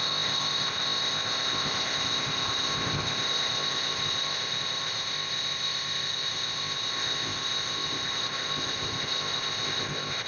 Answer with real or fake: fake